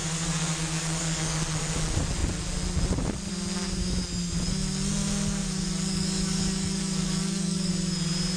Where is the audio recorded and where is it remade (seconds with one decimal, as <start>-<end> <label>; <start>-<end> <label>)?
0.0-1.4 remade; 1.4-5.4 recorded; 5.4-7.7 remade; 7.7-8.4 recorded